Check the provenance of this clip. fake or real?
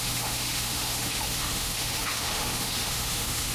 fake